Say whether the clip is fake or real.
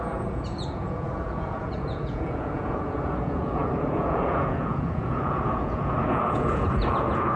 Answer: fake